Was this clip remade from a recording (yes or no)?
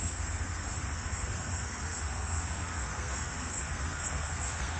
yes